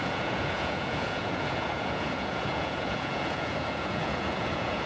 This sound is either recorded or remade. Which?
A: remade